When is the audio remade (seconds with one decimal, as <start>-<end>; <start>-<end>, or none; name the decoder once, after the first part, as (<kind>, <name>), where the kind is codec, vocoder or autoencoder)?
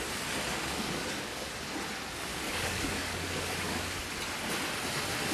0.5-1.5 (codec, DAC); 2.3-4.0